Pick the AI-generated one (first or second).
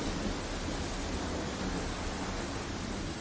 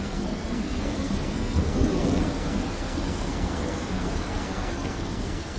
second